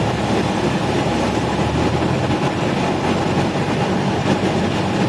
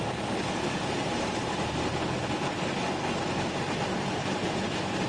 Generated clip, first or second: first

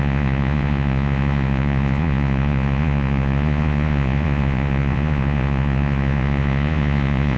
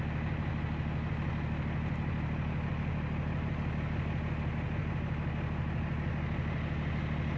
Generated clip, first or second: first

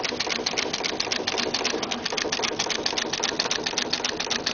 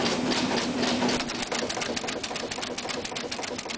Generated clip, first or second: second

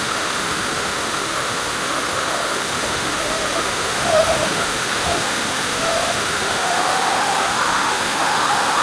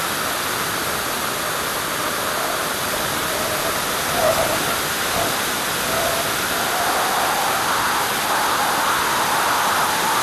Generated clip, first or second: first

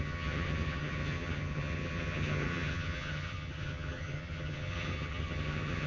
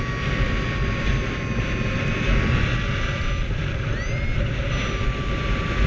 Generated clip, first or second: first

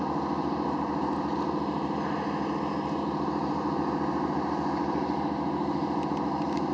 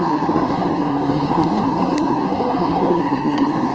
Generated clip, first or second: second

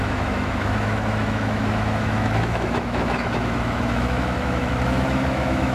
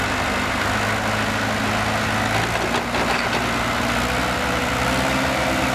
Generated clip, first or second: first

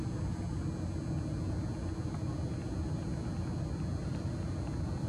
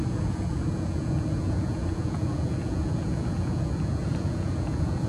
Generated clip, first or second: second